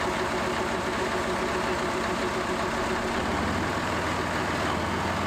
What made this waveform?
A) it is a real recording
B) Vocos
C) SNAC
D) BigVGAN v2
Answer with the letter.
A